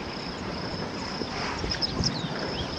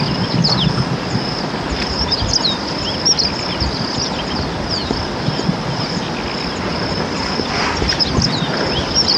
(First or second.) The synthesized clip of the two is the first